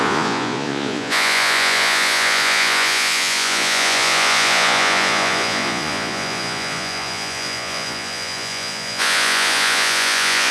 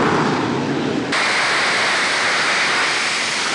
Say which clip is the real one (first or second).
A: second